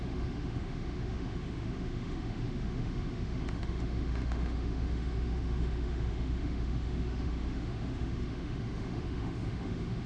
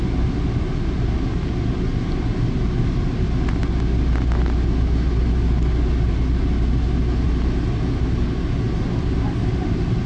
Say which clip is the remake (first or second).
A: first